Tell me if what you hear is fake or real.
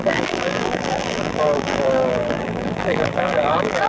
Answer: fake